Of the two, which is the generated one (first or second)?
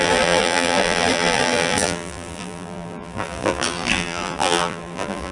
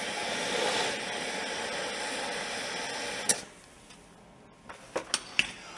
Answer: first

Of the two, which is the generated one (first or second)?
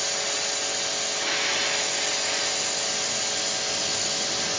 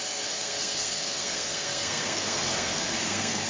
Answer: second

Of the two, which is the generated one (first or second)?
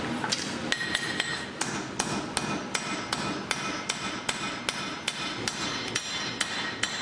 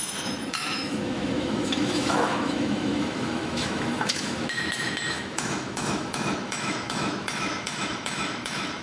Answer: second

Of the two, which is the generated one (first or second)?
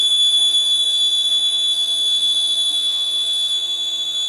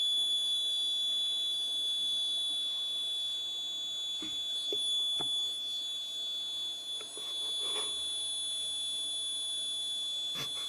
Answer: first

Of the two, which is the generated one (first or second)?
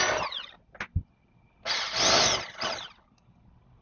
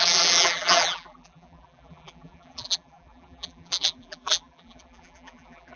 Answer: second